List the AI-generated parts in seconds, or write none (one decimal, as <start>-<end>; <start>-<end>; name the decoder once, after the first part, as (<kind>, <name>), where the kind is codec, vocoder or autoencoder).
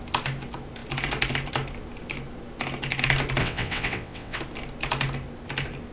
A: 3.4-4.4 (vocoder, WaveNeXt)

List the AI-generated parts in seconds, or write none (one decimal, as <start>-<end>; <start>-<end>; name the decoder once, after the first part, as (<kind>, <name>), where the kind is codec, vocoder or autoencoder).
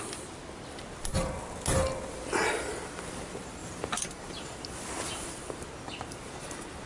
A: 3.6-6.5 (vocoder, BigVGAN v2)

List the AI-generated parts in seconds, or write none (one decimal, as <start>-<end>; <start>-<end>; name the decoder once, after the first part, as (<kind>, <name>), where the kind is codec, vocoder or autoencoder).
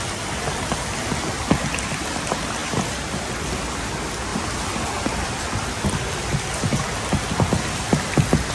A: none